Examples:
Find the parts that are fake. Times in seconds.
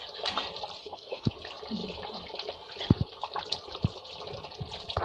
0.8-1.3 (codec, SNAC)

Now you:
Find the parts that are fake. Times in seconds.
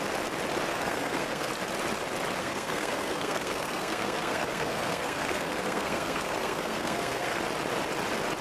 0.7-1.5 (codec, SNAC); 2.4-7.4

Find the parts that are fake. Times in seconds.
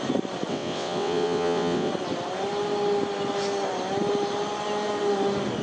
0.5-1.9 (vocoder, WaveNeXt)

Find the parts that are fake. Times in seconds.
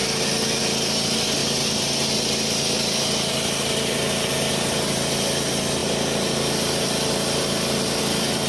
none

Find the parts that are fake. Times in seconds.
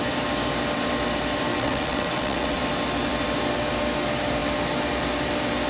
1.5-2.6 (vocoder, WaveNeXt)